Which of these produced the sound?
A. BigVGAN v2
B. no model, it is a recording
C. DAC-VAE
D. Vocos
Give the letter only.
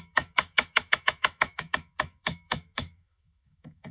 C